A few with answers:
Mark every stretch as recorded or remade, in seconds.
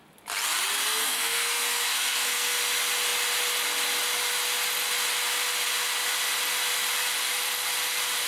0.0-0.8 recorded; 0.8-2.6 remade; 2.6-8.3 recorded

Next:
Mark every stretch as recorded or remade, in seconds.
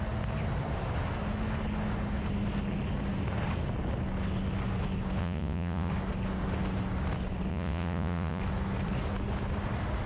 0.0-5.2 recorded; 5.2-5.9 remade; 5.9-7.5 recorded; 7.5-8.4 remade; 8.4-10.1 recorded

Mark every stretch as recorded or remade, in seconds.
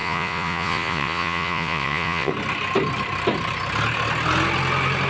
0.0-2.3 remade; 2.3-5.1 recorded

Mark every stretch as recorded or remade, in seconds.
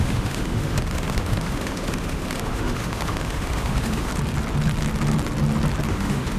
0.0-4.1 remade; 4.1-5.9 recorded; 5.9-6.4 remade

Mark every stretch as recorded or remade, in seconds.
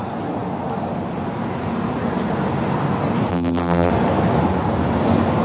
0.0-3.3 recorded; 3.3-3.9 remade; 3.9-5.4 recorded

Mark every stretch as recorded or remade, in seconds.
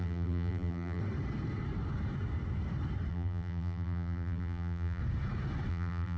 0.0-1.0 remade; 1.0-3.1 recorded; 3.1-5.0 remade; 5.0-5.7 recorded; 5.7-6.2 remade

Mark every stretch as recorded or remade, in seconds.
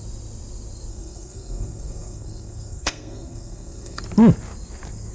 0.0-0.9 recorded; 0.9-4.0 remade; 4.0-5.1 recorded